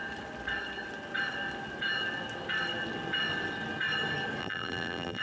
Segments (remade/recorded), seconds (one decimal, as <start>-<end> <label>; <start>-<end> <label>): 0.0-4.4 recorded; 4.4-5.2 remade